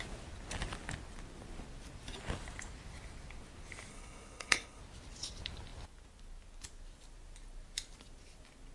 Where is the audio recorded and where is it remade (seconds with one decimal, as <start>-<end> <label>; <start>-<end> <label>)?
0.0-3.9 recorded; 3.9-4.8 remade; 4.8-8.7 recorded